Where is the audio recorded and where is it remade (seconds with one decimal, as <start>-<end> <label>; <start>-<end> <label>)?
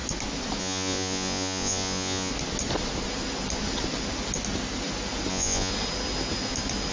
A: 0.0-0.6 recorded; 0.6-2.3 remade; 2.3-5.3 recorded; 5.3-5.7 remade; 5.7-6.9 recorded